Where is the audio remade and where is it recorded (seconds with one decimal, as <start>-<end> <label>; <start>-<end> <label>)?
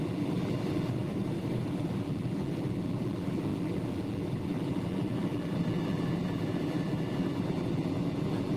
0.0-1.1 remade; 1.1-1.7 recorded; 1.7-8.6 remade